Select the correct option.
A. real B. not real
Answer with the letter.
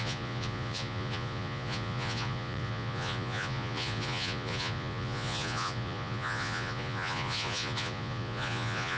B